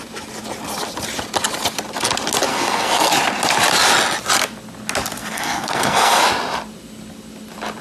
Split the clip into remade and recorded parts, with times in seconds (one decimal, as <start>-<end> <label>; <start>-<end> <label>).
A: 0.0-2.5 recorded; 2.5-3.1 remade; 3.1-5.2 recorded; 5.2-6.2 remade; 6.2-7.8 recorded